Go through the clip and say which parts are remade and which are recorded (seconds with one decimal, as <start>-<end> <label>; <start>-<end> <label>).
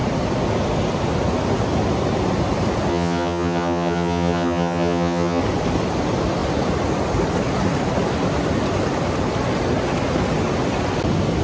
0.0-2.9 recorded; 2.9-5.4 remade; 5.4-11.4 recorded